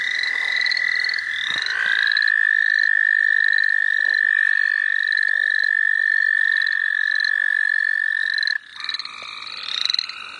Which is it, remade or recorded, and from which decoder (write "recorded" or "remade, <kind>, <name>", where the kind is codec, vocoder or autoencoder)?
recorded